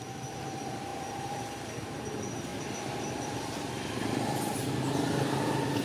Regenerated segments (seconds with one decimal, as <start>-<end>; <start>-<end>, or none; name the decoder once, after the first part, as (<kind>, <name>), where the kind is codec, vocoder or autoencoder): 0.9-1.8 (vocoder, BigVGAN v2); 2.5-4.8